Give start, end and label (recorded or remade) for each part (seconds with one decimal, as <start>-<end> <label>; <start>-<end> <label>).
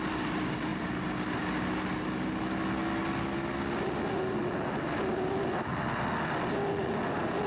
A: 0.0-7.5 recorded